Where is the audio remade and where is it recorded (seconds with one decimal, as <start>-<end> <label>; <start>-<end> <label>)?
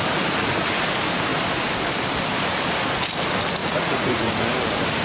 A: 0.0-3.6 recorded; 3.6-4.3 remade; 4.3-5.0 recorded